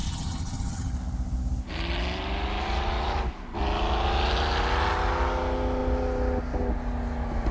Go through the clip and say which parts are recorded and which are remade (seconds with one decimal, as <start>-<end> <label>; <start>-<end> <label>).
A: 0.0-0.9 remade; 0.9-7.5 recorded